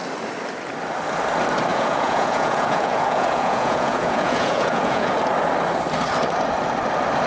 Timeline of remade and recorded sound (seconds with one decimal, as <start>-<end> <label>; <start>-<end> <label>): 0.0-1.7 recorded; 1.7-5.1 remade; 5.1-7.3 recorded